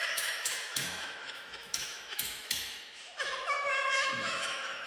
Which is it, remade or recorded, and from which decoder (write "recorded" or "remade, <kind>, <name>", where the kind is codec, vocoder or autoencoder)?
remade, autoencoder, DAC-VAE